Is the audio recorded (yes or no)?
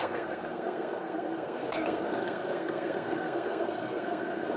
no